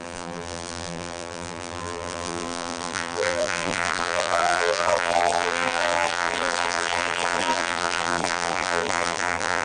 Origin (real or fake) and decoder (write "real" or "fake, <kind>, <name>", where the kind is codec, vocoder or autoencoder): fake, vocoder, BigVGAN v2